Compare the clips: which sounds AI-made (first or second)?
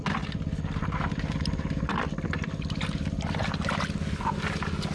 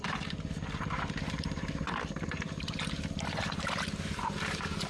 second